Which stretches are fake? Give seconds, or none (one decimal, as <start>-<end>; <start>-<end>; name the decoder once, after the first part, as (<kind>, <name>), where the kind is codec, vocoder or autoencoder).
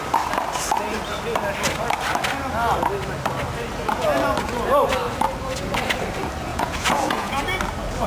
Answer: 6.5-7.4 (vocoder, Vocos)